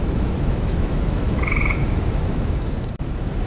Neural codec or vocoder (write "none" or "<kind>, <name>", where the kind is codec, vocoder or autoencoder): autoencoder, DAC-VAE